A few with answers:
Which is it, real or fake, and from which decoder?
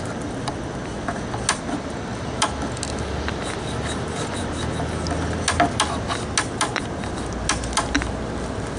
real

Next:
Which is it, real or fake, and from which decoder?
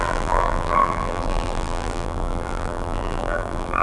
fake, vocoder, BigVGAN v2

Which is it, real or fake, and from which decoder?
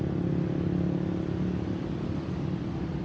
real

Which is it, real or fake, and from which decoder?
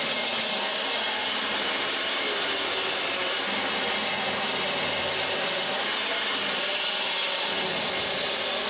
real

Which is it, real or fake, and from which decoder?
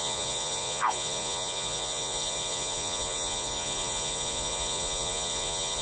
fake, vocoder, Vocos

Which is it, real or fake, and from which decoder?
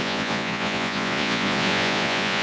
fake, vocoder, Vocos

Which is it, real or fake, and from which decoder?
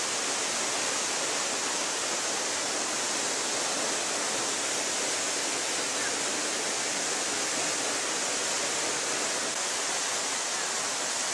real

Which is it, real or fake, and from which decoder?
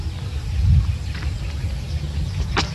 real